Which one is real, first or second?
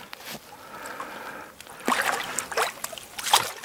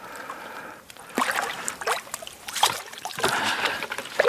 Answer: first